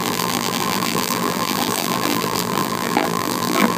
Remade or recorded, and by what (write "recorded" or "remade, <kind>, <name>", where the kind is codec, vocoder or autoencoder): remade, vocoder, BigVGAN v2